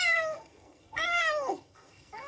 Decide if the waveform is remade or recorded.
remade